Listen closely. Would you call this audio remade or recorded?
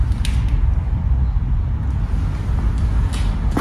recorded